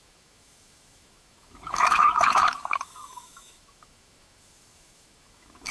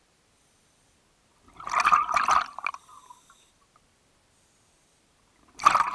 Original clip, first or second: second